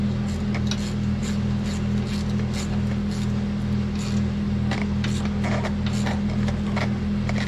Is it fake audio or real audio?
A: real